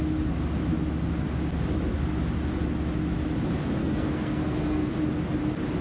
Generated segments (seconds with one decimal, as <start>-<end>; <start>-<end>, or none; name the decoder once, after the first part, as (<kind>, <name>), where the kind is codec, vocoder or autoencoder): 3.8-4.9 (codec, SNAC)